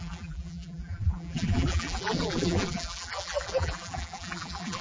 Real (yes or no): no